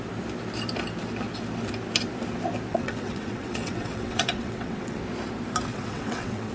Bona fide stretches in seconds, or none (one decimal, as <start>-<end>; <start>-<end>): 0.0-2.7; 5.0-5.7